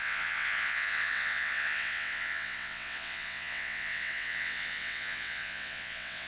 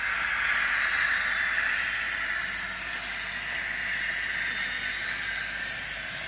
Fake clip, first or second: first